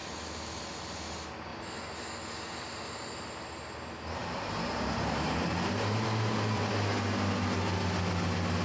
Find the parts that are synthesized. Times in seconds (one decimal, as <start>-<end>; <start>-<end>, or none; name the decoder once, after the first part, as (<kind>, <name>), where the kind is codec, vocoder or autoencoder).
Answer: 4.2-6.7 (vocoder, BigVGAN v2)